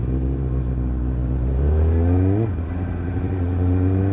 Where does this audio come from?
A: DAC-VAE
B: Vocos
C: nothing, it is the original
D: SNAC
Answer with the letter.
C